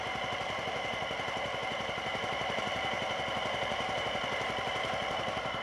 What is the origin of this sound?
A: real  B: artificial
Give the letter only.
B